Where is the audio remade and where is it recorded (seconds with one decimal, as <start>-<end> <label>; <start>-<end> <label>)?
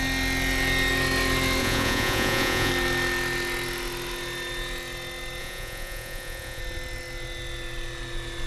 0.0-1.6 recorded; 1.6-2.7 remade; 2.7-5.4 recorded; 5.4-6.6 remade; 6.6-8.5 recorded